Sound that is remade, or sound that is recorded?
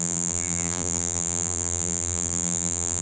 remade